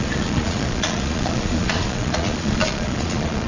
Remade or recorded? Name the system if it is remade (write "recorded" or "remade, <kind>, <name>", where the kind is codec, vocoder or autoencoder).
remade, vocoder, Vocos